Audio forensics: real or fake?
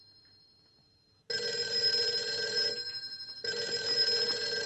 real